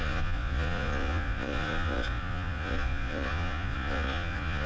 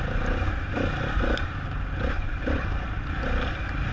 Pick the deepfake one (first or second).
first